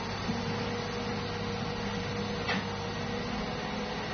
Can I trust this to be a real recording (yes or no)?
yes